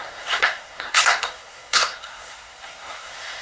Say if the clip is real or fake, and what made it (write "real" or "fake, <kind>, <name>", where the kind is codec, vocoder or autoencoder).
fake, codec, SNAC